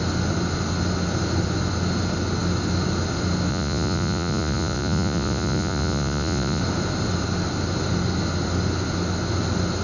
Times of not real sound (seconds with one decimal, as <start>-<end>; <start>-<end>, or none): 3.5-6.6